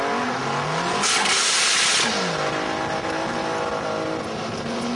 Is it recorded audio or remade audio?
recorded